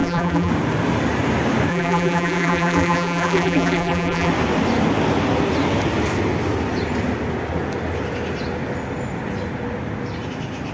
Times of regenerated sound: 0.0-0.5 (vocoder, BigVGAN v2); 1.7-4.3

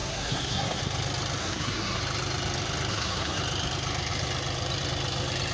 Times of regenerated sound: 0.0-0.8 (codec, SNAC); 1.4-2.0; 2.9-3.4

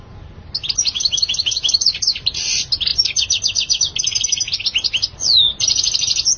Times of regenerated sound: none

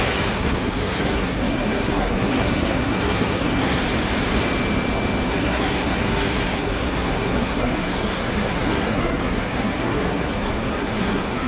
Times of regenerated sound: 0.0-3.8 (codec, SNAC); 5.3-11.5

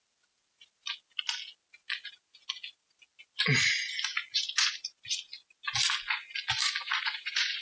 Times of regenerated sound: 6.6-7.6 (vocoder, Vocos)

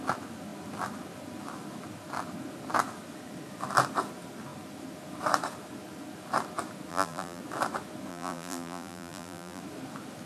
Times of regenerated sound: 6.9-7.4 (vocoder, BigVGAN v2); 8.1-9.6